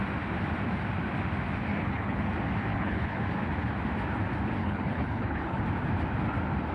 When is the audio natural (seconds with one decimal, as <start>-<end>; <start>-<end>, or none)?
0.0-1.7; 2.3-2.7; 3.2-4.6; 5.6-6.7